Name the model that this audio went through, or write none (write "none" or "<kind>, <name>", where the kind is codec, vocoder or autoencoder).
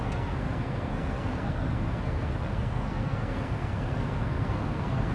codec, SNAC